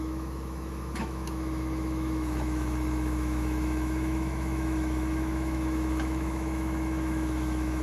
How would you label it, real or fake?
fake